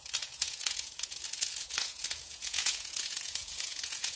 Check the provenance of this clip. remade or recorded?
remade